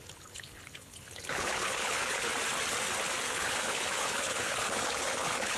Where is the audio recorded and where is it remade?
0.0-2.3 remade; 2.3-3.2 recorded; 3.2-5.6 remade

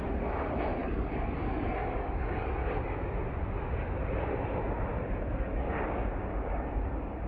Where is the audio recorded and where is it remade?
0.0-0.8 recorded; 0.8-2.7 remade; 2.7-7.3 recorded

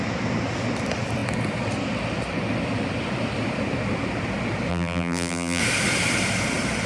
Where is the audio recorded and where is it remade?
0.0-4.7 recorded; 4.7-5.6 remade; 5.6-6.9 recorded

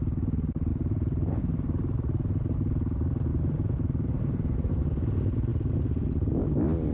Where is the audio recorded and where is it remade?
0.0-0.7 recorded; 0.7-1.4 remade; 1.4-3.3 recorded; 3.3-4.7 remade; 4.7-6.9 recorded